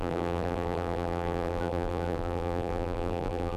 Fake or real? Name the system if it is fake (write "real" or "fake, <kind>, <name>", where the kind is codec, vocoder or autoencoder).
fake, vocoder, BigVGAN v2